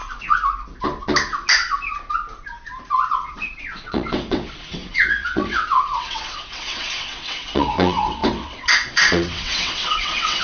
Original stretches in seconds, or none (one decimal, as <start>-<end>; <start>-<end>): 0.0-3.2